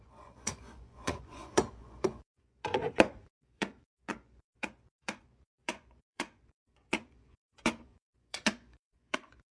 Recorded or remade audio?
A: remade